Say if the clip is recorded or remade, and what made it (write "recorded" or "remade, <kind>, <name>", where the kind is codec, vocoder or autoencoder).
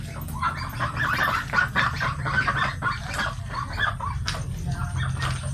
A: recorded